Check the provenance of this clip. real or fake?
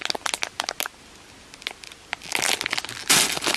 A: real